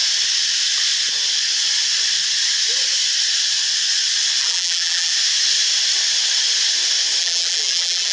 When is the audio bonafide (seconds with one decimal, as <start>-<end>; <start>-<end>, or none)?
0.0-4.4; 5.1-7.2

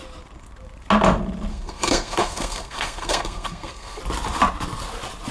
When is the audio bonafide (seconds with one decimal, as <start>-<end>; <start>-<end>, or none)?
0.0-1.5; 4.0-5.3

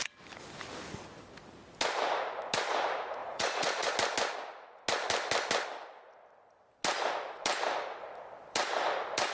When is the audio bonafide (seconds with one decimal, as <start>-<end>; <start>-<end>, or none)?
0.0-3.2; 3.9-9.3

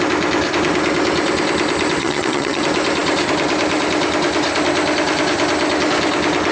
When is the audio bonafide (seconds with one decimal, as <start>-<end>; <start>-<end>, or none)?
0.0-2.0; 2.6-6.5